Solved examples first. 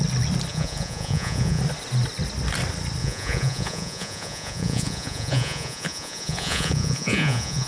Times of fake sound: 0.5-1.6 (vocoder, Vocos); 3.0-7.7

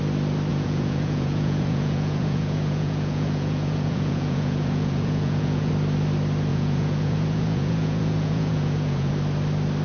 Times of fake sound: 0.5-5.7 (vocoder, Vocos); 6.5-9.1

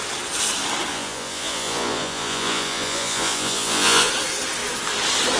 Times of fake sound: 0.9-4.1 (vocoder, Vocos)